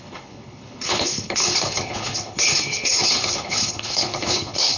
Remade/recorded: remade